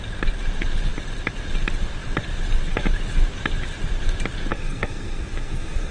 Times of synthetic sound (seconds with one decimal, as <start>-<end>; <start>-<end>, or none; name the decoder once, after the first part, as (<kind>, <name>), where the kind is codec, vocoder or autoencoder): 4.5-5.9 (codec, SNAC)